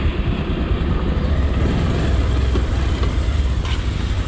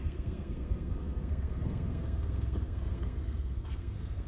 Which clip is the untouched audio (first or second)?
first